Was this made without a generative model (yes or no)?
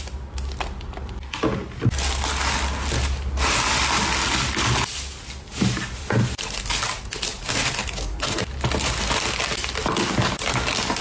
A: yes